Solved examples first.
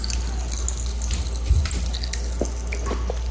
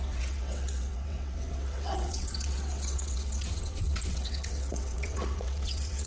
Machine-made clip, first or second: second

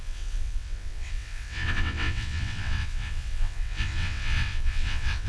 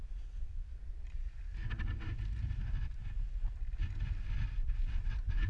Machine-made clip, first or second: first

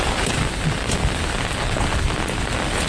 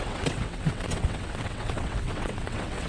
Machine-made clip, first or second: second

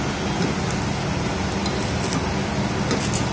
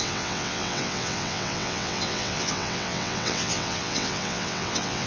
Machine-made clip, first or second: second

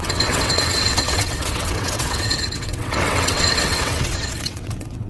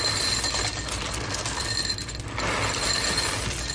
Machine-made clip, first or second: first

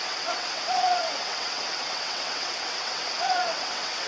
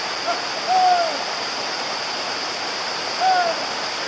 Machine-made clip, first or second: first